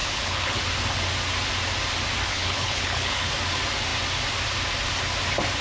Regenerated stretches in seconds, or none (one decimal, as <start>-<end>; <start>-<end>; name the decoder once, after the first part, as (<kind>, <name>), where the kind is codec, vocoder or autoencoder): 0.0-0.6 (codec, HILCodec); 2.3-3.3